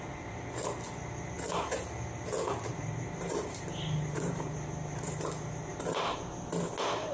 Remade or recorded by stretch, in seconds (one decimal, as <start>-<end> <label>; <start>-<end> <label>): 0.0-2.7 recorded; 2.7-5.7 remade; 5.7-7.1 recorded

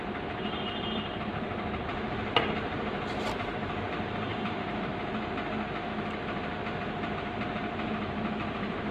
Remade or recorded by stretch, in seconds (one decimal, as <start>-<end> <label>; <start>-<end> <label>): 0.0-4.9 remade; 4.9-6.9 recorded; 6.9-8.9 remade